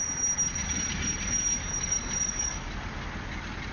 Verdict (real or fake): real